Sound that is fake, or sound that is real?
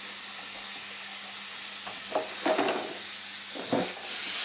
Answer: real